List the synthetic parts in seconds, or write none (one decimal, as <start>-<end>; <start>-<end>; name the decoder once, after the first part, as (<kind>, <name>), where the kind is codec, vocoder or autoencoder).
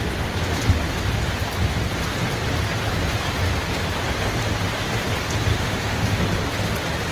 5.5-6.2 (autoencoder, DAC-VAE)